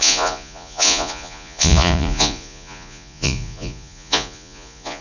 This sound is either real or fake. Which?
fake